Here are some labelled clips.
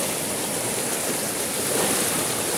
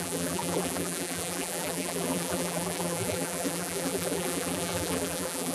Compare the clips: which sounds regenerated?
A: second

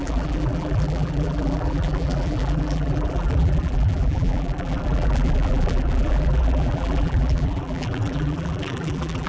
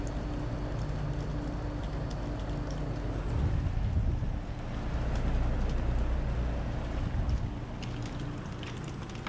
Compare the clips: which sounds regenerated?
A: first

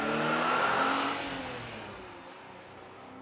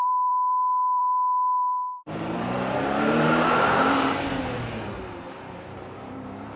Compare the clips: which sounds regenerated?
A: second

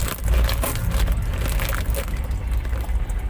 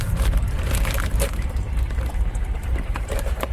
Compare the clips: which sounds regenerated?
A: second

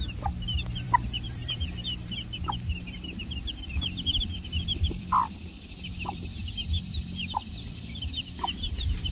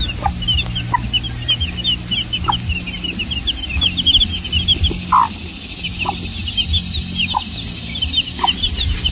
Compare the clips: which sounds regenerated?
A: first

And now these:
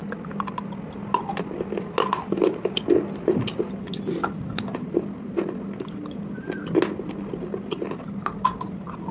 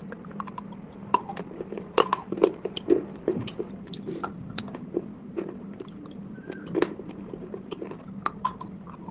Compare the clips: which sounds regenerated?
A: second